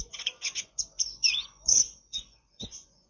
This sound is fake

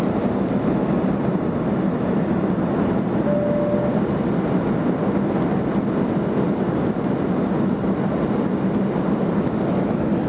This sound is real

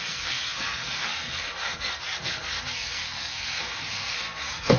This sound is fake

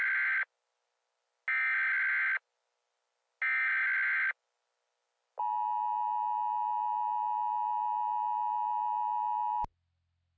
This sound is real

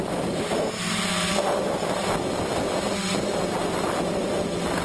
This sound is real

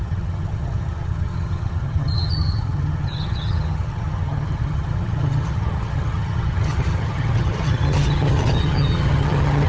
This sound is fake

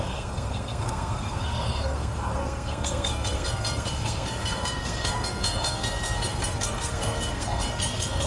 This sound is fake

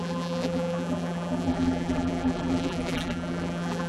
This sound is fake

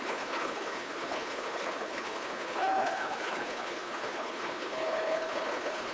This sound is fake